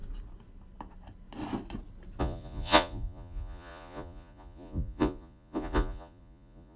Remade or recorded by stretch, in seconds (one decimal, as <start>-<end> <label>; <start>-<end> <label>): 0.0-2.2 recorded; 2.2-6.8 remade